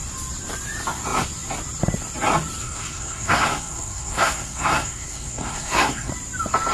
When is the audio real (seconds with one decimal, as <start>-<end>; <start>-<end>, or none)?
0.0-2.6; 6.1-6.7